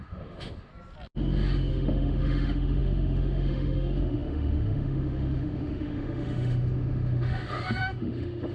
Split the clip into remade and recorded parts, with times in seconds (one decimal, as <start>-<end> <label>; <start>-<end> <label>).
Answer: 0.0-0.7 remade; 0.7-1.7 recorded; 1.7-8.5 remade